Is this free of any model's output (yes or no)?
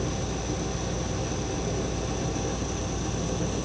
yes